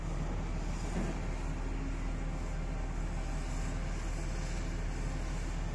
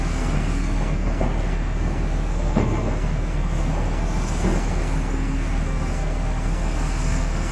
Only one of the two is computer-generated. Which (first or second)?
second